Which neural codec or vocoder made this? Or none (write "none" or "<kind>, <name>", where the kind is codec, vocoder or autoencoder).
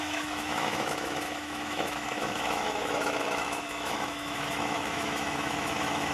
autoencoder, DAC-VAE